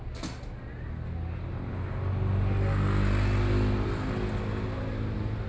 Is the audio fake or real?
real